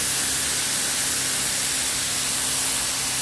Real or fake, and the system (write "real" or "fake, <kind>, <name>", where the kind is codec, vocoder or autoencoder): real